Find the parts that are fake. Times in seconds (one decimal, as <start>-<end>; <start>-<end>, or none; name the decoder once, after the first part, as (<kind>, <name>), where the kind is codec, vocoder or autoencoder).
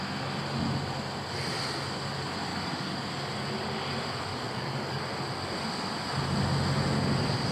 2.5-3.1 (codec, DAC); 4.3-5.0